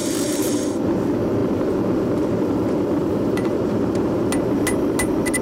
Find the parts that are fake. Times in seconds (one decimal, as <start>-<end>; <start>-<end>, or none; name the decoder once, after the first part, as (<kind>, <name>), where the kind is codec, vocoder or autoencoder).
0.0-0.5 (vocoder, BigVGAN v2); 3.0-4.2